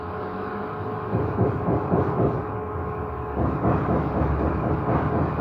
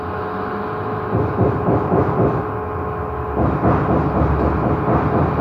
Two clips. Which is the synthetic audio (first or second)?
first